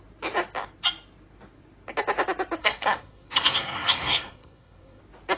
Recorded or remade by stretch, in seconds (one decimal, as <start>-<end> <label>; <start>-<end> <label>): 0.0-2.6 recorded; 2.6-5.0 remade; 5.0-5.4 recorded